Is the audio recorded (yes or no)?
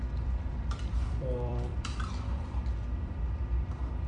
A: no